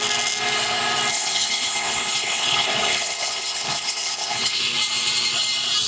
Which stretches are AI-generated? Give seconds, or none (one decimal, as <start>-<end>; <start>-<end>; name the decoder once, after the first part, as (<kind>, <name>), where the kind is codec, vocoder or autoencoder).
1.1-4.6 (codec, HILCodec)

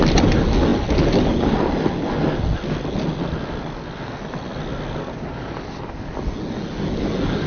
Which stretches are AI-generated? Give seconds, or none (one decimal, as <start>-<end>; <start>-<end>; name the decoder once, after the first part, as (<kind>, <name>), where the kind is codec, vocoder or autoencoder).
none

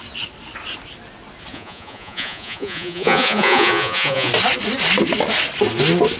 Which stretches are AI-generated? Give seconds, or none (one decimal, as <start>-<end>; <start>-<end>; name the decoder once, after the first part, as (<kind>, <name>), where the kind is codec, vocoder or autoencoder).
1.5-4.3 (vocoder, Vocos)

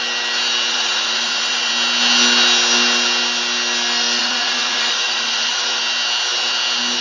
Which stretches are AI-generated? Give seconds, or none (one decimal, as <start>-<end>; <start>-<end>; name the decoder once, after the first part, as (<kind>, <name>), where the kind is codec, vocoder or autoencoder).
0.7-1.7 (vocoder, Vocos); 4.2-5.8

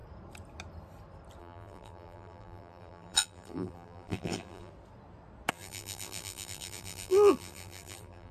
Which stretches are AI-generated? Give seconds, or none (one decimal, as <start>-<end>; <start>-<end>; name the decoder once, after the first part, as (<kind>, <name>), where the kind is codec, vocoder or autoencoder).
1.4-4.7 (vocoder, BigVGAN v2); 5.5-8.3

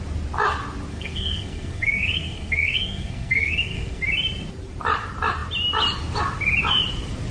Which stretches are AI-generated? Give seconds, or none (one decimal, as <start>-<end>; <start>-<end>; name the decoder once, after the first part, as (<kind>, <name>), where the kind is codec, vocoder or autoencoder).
0.9-4.0 (codec, SNAC)

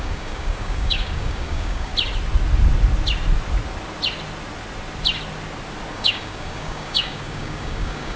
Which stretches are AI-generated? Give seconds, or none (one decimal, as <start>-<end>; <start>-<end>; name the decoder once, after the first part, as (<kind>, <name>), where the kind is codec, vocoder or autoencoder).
0.0-1.9 (codec, DAC); 5.9-8.2